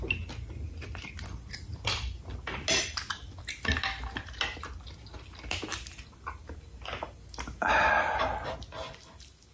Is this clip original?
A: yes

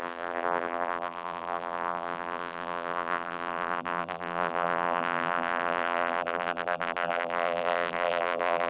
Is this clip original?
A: no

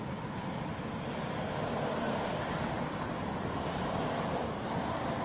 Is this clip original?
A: yes